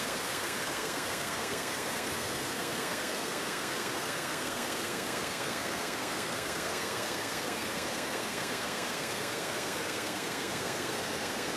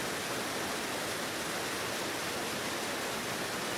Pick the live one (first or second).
second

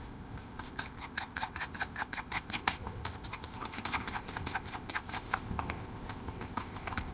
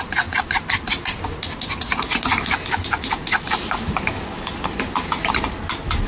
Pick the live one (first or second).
second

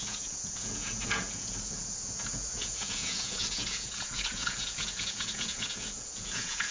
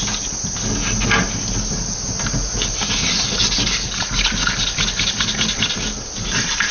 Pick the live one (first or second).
second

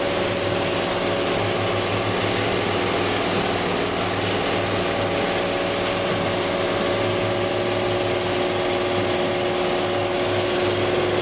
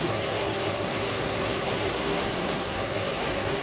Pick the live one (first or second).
first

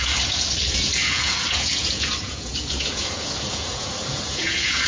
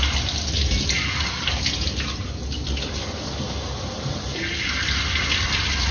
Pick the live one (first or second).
second